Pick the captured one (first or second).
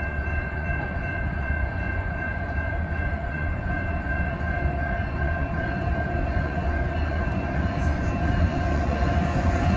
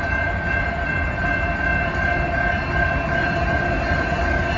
second